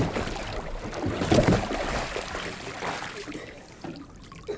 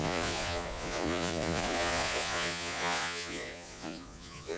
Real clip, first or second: first